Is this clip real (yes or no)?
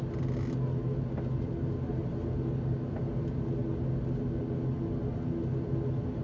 yes